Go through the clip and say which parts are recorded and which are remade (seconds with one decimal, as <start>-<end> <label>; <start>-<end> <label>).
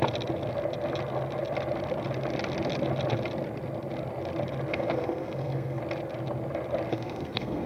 0.0-4.7 recorded; 4.7-5.8 remade; 5.8-6.9 recorded; 6.9-7.7 remade